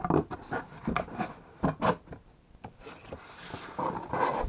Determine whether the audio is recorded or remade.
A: recorded